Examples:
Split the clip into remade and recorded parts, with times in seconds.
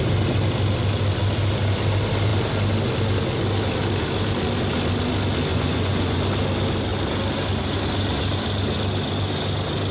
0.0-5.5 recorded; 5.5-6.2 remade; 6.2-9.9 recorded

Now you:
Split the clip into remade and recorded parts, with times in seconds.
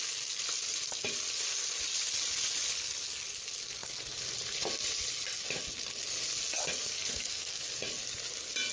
0.0-6.7 recorded; 6.7-7.6 remade; 7.6-8.7 recorded